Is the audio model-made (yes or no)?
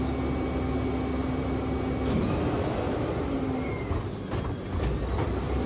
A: no